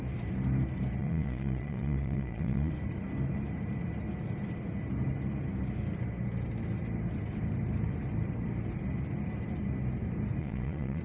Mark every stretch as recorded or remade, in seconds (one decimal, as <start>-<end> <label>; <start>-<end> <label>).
0.0-1.0 recorded; 1.0-2.7 remade; 2.7-10.4 recorded; 10.4-11.0 remade